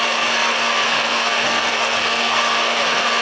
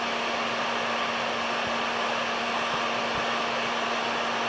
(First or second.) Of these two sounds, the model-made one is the first